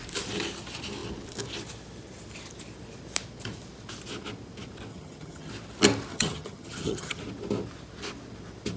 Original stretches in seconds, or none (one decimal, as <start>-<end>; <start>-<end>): 0.0-4.9; 5.5-6.1; 7.2-8.8